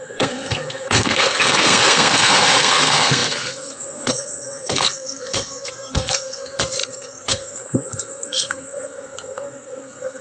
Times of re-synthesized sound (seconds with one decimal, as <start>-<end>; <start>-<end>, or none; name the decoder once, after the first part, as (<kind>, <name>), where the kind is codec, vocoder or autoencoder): 0.0-10.2 (codec, SNAC)

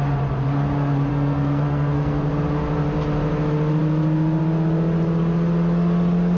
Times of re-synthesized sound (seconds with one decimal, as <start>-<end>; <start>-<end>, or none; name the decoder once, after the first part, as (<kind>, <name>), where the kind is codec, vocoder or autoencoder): 1.1-2.3 (codec, SNAC)

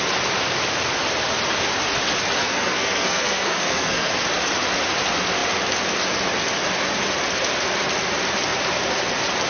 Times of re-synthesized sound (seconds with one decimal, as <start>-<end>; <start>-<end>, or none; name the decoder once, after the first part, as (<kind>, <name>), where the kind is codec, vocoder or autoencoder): 2.4-4.1 (codec, SNAC)

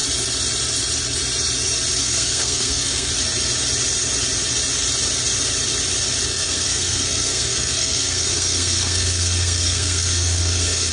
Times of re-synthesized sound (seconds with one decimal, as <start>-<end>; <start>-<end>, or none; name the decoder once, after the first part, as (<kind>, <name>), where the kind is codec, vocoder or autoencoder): 2.0-3.1 (codec, SNAC); 6.3-10.9

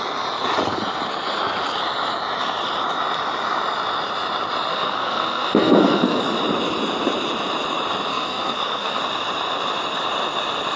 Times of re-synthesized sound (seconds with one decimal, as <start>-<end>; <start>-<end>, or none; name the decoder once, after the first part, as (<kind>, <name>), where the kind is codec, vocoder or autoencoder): 4.7-6.2 (codec, SNAC); 8.1-9.0

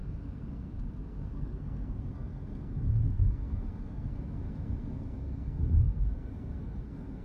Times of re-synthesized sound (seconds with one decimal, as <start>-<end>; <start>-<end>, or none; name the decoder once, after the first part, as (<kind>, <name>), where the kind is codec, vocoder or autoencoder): 0.0-7.2 (codec, SNAC)